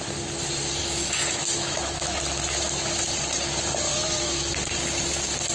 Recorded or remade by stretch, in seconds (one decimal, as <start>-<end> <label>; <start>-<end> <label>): 0.0-0.8 recorded; 0.8-3.0 remade; 3.0-3.9 recorded; 3.9-4.5 remade; 4.5-5.5 recorded